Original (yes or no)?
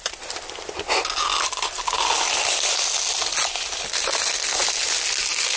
yes